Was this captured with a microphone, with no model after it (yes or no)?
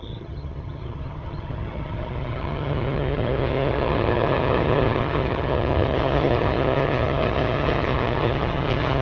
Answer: no